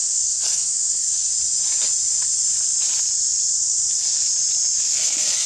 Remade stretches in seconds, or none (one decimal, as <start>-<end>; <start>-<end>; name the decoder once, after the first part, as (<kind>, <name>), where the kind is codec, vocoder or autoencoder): 0.0-1.3 (codec, SNAC); 3.5-4.3; 4.8-5.5